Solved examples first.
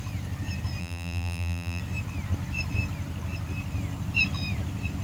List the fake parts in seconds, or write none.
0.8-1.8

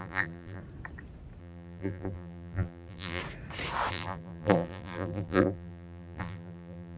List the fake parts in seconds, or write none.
0.0-0.6; 1.4-3.2; 3.9-7.0

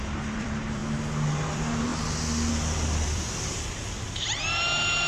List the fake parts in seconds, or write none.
0.0-0.8; 1.3-1.9; 2.5-5.1

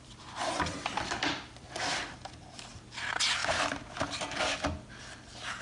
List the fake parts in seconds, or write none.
0.0-3.4; 4.9-5.6

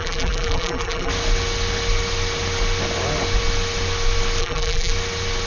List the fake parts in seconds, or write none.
0.0-1.1; 4.4-4.9

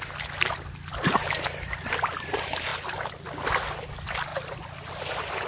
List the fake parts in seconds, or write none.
none